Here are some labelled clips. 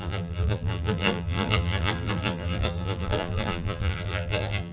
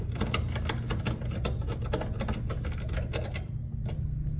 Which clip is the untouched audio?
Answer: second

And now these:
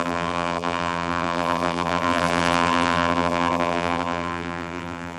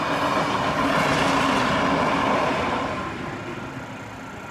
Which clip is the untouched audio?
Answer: second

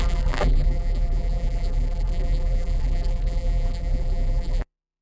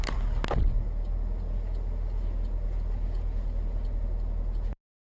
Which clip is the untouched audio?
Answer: second